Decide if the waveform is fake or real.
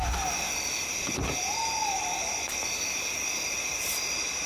real